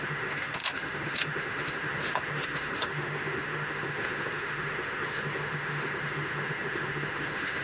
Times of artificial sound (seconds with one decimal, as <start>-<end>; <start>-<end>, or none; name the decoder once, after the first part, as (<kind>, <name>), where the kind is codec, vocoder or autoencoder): 0.0-7.6 (autoencoder, DAC-VAE)